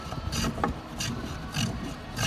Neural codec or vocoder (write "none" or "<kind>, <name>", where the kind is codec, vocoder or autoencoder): none